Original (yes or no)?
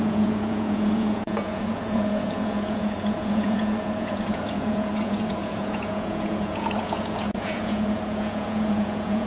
no